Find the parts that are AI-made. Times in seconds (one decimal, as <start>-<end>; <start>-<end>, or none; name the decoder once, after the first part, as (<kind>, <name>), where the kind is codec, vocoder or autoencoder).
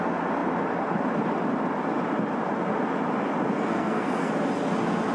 3.7-4.3 (codec, SNAC)